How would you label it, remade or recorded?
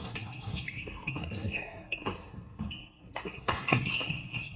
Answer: remade